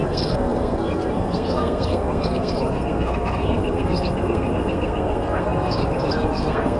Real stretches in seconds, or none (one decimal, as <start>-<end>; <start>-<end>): none